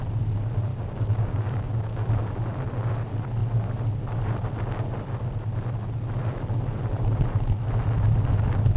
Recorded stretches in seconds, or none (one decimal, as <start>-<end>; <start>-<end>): 0.0-0.7; 2.4-8.8